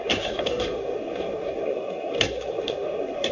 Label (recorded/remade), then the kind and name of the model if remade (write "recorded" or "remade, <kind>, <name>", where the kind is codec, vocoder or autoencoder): remade, codec, SNAC